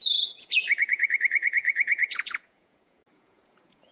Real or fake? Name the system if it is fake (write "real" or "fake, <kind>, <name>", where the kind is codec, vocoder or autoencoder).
fake, vocoder, Vocos